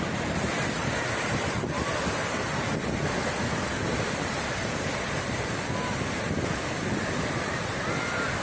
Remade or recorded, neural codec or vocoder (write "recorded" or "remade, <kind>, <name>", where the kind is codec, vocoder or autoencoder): recorded